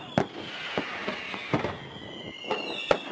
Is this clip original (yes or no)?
yes